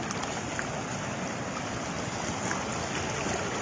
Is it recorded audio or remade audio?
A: recorded